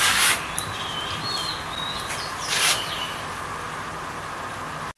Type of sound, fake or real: real